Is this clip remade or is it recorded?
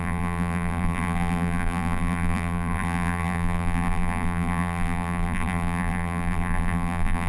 remade